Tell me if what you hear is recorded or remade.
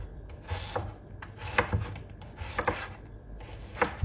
recorded